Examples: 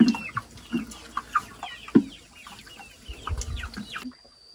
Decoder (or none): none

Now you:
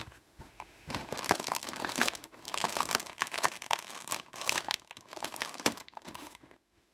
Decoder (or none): autoencoder, DAC-VAE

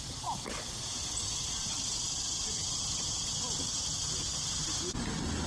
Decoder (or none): none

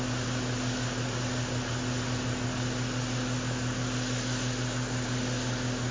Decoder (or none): none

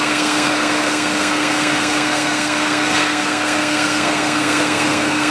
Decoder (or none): codec, SNAC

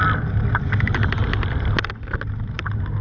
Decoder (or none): none